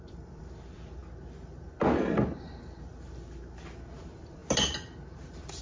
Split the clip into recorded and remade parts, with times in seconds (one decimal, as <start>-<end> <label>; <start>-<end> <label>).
0.0-1.0 remade; 1.0-4.0 recorded; 4.0-4.4 remade; 4.4-5.6 recorded